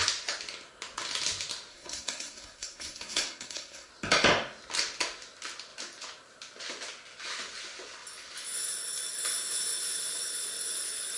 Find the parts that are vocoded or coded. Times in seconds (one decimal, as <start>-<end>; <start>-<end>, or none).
1.7-3.9